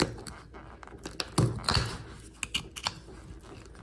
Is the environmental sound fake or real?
real